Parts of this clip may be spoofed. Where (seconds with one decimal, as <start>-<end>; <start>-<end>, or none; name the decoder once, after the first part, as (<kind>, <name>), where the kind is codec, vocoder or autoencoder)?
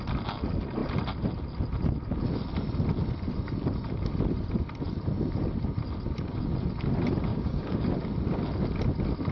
7.3-7.9 (codec, DAC)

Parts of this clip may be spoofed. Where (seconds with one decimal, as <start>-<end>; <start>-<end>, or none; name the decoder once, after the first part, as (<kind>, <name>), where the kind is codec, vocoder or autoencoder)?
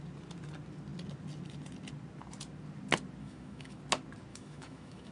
3.2-3.8 (autoencoder, DAC-VAE); 4.3-5.1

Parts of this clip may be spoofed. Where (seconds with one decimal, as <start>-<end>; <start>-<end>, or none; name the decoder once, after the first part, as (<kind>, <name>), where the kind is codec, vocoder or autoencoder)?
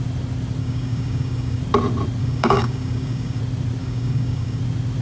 0.6-1.6 (codec, DAC); 2.2-3.4; 3.8-4.6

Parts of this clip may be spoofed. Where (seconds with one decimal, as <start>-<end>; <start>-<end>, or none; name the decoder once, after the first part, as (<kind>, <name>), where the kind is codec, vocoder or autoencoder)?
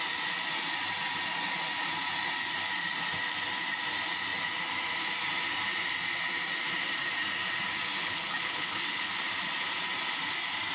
8.0-9.1 (codec, HILCodec)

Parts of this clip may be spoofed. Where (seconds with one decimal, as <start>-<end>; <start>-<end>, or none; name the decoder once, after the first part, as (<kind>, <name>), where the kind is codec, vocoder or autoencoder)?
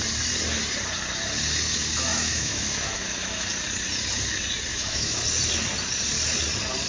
2.1-3.5 (autoencoder, DAC-VAE); 4.7-5.2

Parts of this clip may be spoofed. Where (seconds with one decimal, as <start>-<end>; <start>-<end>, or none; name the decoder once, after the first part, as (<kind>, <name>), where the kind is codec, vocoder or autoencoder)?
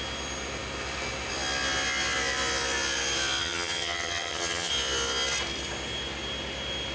3.4-4.7 (vocoder, HiFi-GAN)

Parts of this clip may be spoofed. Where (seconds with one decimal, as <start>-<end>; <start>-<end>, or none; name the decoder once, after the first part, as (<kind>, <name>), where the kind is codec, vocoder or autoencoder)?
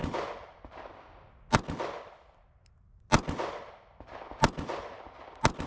none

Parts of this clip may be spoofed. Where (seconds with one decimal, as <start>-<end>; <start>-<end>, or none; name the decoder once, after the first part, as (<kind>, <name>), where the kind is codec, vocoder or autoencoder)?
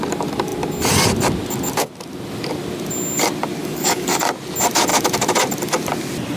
3.6-4.2 (codec, DAC)